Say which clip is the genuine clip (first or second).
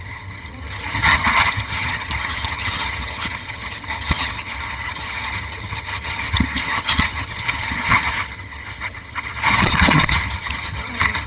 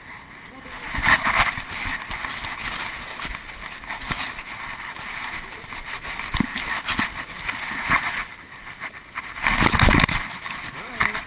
second